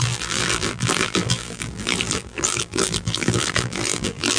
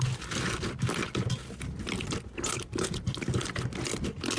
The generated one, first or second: first